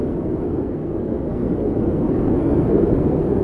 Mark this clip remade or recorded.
remade